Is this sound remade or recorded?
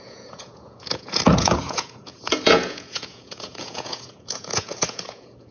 remade